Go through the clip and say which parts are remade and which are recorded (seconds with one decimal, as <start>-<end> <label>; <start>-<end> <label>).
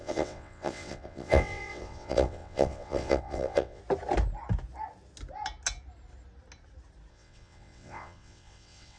0.0-3.8 remade; 3.8-7.1 recorded; 7.1-9.0 remade